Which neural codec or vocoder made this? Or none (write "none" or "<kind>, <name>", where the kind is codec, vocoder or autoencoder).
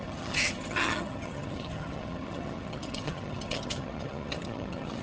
vocoder, HiFi-GAN